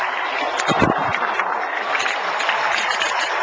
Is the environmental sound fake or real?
fake